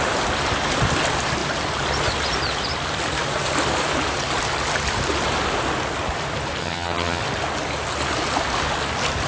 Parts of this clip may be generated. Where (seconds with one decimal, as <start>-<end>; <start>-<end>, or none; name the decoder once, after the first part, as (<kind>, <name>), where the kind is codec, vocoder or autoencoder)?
6.6-7.2 (vocoder, HiFi-GAN)

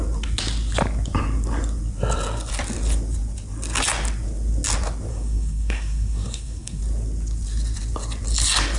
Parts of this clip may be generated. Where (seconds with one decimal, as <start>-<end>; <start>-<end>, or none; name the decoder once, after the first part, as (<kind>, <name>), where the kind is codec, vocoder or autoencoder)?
5.1-6.8 (codec, SNAC)

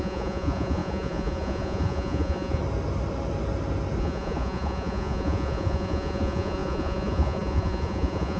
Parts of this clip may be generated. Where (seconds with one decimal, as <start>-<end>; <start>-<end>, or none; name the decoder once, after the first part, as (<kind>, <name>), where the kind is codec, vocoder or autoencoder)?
0.0-2.6 (vocoder, Vocos); 4.0-8.4

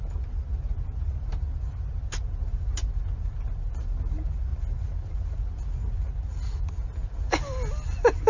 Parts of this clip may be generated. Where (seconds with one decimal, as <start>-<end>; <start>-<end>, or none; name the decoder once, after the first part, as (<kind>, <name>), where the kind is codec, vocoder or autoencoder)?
none

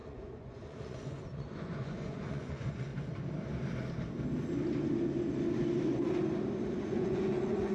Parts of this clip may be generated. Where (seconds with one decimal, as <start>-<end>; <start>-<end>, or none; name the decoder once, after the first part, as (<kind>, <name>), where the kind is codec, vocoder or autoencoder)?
0.0-2.9 (vocoder, Vocos); 6.7-7.7

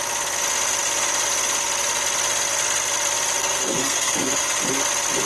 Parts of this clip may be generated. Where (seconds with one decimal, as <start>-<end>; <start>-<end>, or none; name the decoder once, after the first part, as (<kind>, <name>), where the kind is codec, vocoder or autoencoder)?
3.4-4.5 (codec, SNAC)